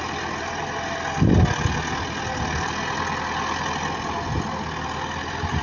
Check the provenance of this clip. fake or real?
real